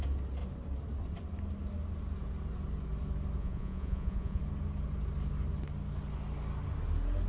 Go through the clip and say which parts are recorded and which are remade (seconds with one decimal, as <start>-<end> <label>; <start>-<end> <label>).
0.0-3.4 recorded; 3.4-4.4 remade; 4.4-7.3 recorded